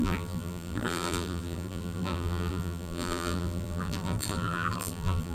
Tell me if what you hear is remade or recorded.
remade